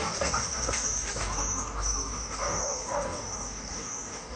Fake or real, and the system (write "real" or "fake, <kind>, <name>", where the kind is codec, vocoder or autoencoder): fake, codec, DAC